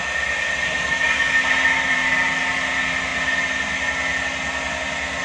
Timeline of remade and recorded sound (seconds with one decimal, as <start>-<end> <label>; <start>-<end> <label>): 0.0-5.2 recorded

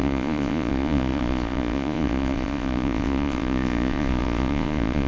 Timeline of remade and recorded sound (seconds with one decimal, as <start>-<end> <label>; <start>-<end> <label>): 0.0-5.1 remade

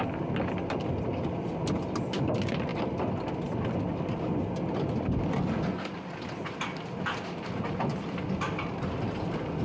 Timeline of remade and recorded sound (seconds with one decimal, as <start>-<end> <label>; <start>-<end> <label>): 0.0-9.6 recorded

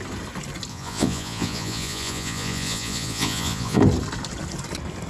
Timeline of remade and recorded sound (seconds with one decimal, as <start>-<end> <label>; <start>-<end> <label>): 0.0-0.7 recorded; 0.7-3.8 remade; 3.8-5.1 recorded